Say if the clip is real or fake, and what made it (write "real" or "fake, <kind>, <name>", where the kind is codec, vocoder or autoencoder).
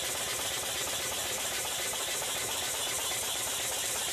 fake, vocoder, BigVGAN v2